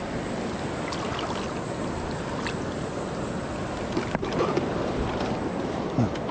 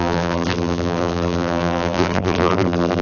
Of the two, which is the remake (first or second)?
second